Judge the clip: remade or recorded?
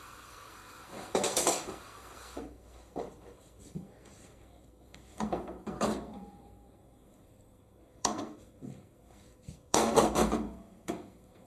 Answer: remade